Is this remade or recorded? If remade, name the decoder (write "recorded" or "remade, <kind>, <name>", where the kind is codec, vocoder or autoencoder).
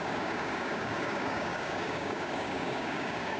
remade, codec, DAC